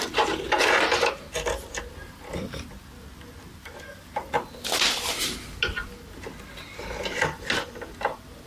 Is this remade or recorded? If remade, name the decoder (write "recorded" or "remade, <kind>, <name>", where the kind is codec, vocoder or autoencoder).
recorded